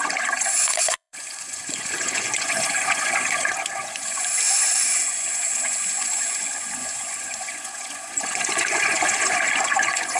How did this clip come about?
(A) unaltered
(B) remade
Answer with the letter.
B